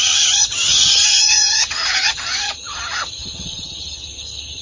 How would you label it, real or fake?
fake